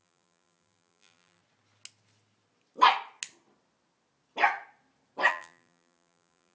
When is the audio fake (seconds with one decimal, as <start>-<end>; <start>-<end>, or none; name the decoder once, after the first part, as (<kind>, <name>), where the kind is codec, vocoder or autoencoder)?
0.0-1.4 (vocoder, BigVGAN v2); 5.3-6.5